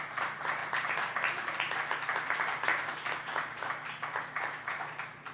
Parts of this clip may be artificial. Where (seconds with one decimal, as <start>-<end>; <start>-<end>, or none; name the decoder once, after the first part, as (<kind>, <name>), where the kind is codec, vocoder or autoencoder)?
none